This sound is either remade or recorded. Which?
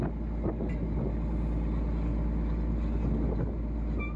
recorded